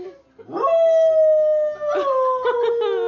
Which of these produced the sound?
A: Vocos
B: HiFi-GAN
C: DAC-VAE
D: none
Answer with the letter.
D